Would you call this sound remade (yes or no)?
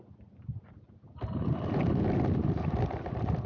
no